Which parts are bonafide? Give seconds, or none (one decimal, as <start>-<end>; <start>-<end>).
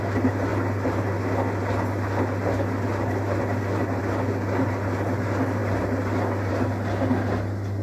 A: 0.0-7.8